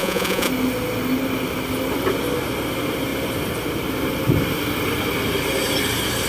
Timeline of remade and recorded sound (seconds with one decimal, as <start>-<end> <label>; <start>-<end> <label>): 0.0-0.5 remade; 0.5-6.3 recorded